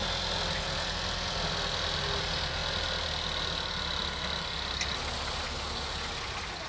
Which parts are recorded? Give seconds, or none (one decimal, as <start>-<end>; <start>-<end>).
0.0-6.7